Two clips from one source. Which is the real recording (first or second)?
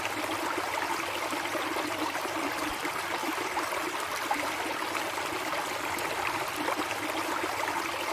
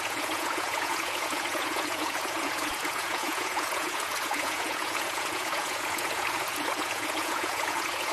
first